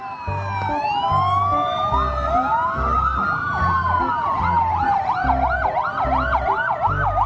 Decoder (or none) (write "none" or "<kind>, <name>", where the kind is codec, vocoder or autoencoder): none